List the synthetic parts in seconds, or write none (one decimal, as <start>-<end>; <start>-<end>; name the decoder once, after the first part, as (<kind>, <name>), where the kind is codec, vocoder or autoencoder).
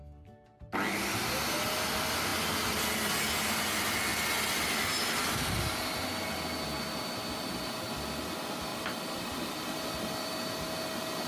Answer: 8.7-9.5 (vocoder, BigVGAN v2)